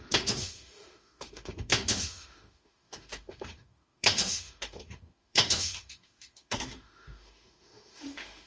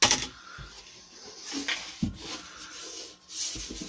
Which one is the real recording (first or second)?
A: second